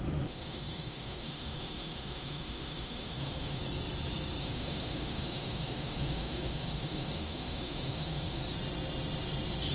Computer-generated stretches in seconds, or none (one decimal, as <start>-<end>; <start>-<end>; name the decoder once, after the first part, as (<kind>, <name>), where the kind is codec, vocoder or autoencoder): 0.0-3.6 (autoencoder, DAC-VAE); 4.4-8.4